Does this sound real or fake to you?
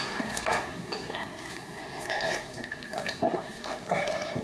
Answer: fake